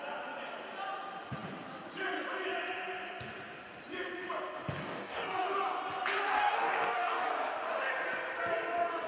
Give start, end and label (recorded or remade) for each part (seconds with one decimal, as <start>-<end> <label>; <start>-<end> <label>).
0.0-4.8 recorded; 4.8-5.5 remade; 5.5-6.3 recorded; 6.3-7.3 remade; 7.3-9.1 recorded